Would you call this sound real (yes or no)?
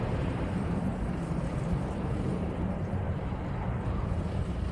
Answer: no